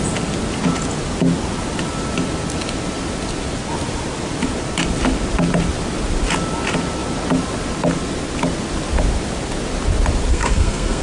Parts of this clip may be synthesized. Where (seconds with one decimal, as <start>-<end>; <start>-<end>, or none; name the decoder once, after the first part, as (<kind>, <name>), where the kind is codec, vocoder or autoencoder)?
10.3-11.0 (codec, SNAC)